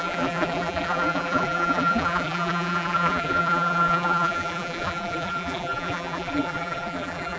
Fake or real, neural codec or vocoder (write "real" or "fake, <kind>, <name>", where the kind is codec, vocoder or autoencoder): fake, vocoder, BigVGAN v2